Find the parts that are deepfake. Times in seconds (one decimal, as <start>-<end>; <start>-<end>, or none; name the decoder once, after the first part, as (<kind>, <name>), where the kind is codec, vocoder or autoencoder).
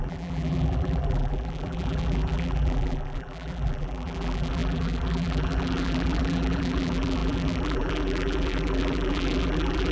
0.0-9.9 (vocoder, BigVGAN v2)